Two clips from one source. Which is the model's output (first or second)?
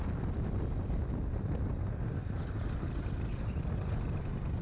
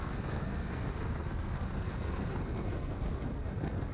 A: second